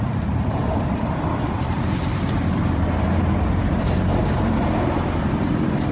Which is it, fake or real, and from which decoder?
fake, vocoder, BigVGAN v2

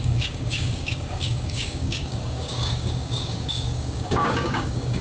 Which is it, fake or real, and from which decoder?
fake, codec, DAC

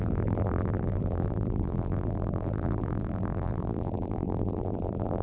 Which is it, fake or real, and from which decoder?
fake, vocoder, BigVGAN v2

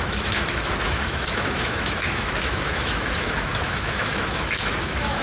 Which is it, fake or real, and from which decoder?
fake, autoencoder, DAC-VAE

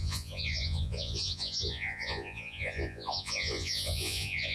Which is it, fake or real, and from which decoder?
fake, vocoder, Vocos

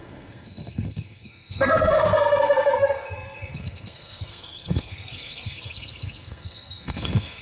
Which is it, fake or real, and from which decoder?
fake, codec, SNAC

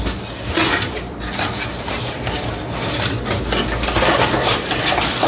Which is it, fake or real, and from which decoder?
real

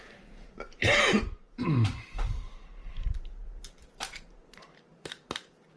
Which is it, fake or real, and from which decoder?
fake, vocoder, BigVGAN v2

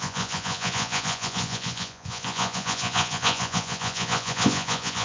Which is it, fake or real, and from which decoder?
fake, vocoder, Vocos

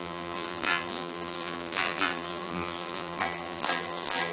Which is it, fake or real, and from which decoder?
fake, vocoder, BigVGAN v2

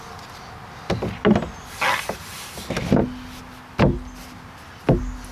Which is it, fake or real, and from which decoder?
real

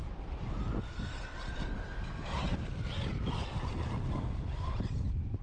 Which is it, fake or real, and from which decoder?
real